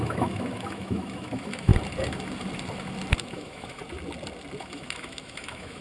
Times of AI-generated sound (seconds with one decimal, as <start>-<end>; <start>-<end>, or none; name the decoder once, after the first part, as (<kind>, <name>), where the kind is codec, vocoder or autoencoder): 0.0-1.7 (autoencoder, DAC-VAE); 3.1-3.8; 4.6-5.8